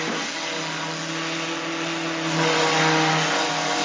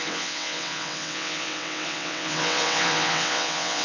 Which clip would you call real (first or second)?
first